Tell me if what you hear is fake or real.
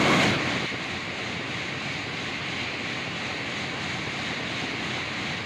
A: real